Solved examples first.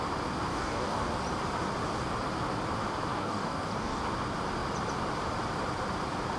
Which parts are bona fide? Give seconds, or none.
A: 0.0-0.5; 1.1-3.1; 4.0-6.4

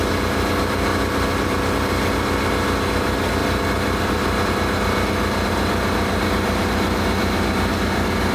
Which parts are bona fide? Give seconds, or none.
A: 0.0-0.9; 1.6-3.4; 4.5-8.3

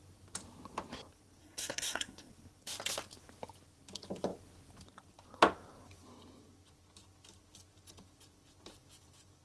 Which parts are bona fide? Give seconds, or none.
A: 0.0-1.4; 2.3-9.4

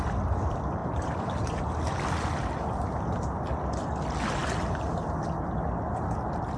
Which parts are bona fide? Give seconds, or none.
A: 0.0-6.6

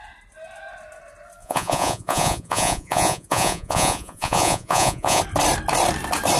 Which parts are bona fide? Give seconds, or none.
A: 0.0-1.4; 5.2-6.4

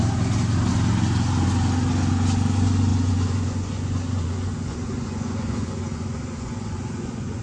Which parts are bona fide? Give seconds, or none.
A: 0.0-2.9